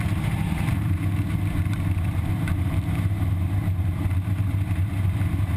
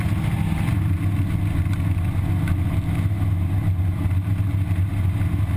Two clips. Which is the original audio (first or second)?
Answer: second